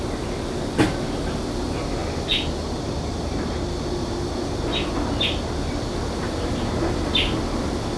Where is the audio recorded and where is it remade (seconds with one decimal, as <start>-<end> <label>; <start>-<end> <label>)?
0.0-8.0 recorded

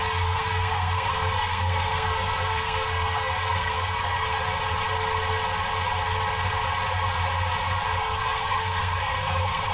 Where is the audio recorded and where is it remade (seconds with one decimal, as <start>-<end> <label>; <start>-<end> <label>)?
0.0-4.4 remade; 4.4-8.0 recorded; 8.0-9.7 remade

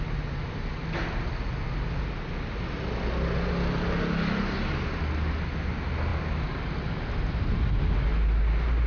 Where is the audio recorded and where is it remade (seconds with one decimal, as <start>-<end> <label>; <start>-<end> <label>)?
0.0-8.9 recorded

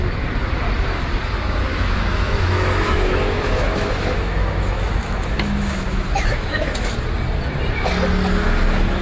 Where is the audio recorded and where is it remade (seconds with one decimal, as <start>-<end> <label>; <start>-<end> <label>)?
0.0-1.7 recorded; 1.7-6.9 remade; 6.9-9.0 recorded